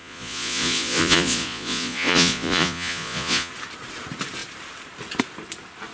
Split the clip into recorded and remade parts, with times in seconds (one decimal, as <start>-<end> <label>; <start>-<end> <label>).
0.0-3.5 remade; 3.5-5.9 recorded